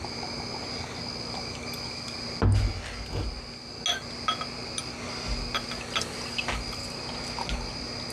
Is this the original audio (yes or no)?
yes